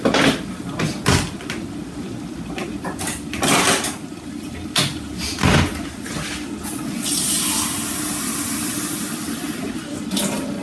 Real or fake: real